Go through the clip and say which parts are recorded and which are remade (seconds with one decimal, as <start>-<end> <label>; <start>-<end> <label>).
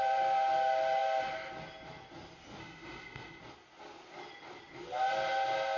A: 0.0-2.6 recorded; 2.6-3.4 remade; 3.4-5.8 recorded